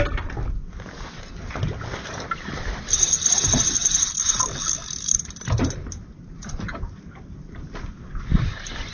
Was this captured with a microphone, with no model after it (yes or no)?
yes